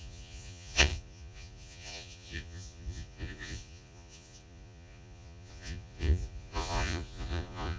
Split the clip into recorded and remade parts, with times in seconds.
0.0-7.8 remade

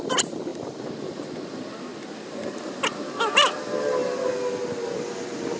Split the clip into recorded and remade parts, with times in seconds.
0.0-5.6 recorded

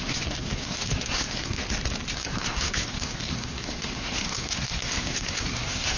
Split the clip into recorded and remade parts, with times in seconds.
0.0-1.6 remade; 1.6-2.1 recorded; 2.1-6.0 remade